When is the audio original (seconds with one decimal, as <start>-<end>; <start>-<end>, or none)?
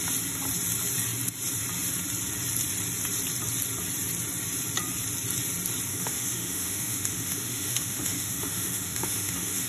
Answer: 0.0-5.9